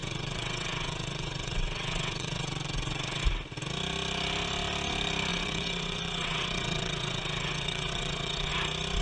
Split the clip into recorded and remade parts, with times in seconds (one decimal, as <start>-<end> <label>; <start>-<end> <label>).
0.0-3.2 remade; 3.2-5.3 recorded; 5.3-8.5 remade; 8.5-9.0 recorded